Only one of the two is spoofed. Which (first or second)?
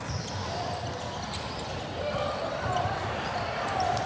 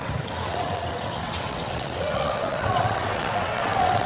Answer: second